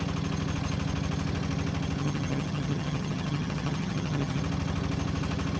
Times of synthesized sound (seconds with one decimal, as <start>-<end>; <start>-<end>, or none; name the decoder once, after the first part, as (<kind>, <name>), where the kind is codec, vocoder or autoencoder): 2.0-4.4 (vocoder, HiFi-GAN)